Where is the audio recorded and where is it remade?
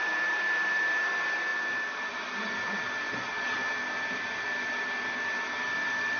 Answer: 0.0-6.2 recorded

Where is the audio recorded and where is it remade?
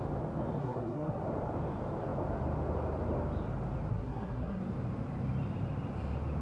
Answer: 0.0-0.6 recorded; 0.6-1.2 remade; 1.2-3.9 recorded; 3.9-4.6 remade; 4.6-6.4 recorded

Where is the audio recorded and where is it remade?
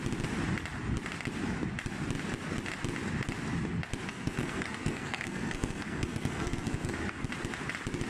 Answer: 0.0-4.1 recorded; 4.1-7.3 remade; 7.3-8.1 recorded